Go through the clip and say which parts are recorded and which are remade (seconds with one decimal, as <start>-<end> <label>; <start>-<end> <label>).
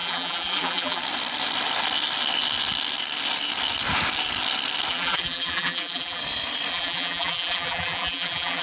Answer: 0.0-1.0 remade; 1.0-4.9 recorded; 4.9-6.2 remade; 6.2-6.7 recorded; 6.7-8.6 remade